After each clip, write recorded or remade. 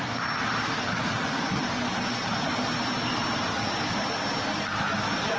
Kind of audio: recorded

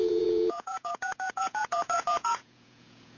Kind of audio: remade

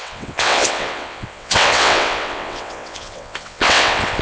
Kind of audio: remade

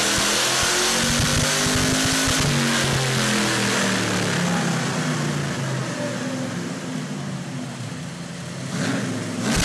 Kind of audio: recorded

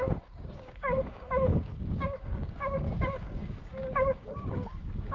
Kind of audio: remade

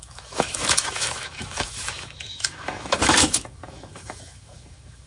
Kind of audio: remade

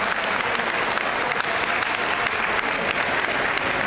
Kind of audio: recorded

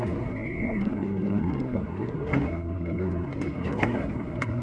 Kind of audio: remade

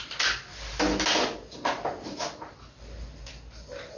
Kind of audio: recorded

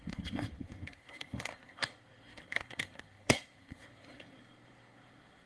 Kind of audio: remade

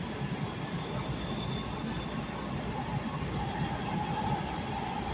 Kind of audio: recorded